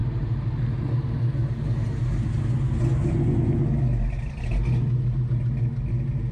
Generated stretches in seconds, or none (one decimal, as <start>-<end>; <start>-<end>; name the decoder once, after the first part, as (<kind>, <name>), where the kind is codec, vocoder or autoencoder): none